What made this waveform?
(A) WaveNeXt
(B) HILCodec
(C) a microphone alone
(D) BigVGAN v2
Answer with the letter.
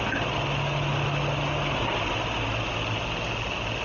C